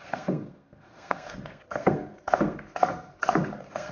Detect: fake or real fake